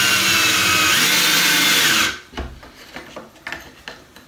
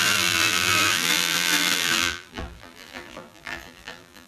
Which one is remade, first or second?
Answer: second